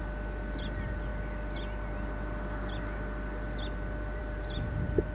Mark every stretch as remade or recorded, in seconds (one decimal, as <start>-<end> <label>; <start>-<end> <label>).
0.0-1.1 remade; 1.1-4.2 recorded; 4.2-5.1 remade